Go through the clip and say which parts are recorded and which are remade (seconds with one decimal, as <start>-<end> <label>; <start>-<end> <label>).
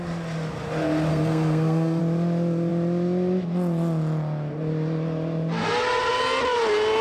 0.0-1.1 recorded; 1.1-2.0 remade; 2.0-7.0 recorded